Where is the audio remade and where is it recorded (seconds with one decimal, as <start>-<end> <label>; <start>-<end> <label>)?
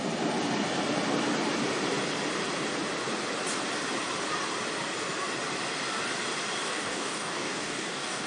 0.0-6.7 recorded; 6.7-8.3 remade